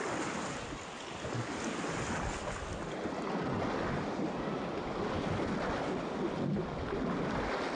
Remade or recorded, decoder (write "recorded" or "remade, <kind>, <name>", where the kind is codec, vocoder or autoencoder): recorded